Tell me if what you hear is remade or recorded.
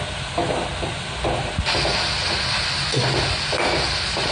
recorded